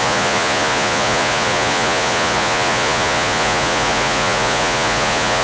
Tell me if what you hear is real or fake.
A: fake